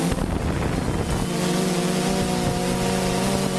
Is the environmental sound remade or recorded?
recorded